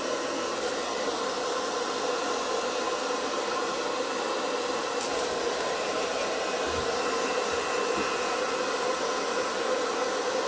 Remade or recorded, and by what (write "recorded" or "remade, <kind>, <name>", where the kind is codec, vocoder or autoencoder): recorded